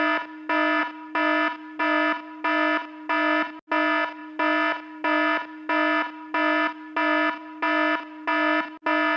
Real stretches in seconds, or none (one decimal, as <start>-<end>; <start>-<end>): 0.0-9.2